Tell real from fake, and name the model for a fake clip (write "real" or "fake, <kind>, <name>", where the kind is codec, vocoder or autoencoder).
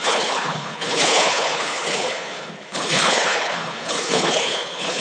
fake, codec, HILCodec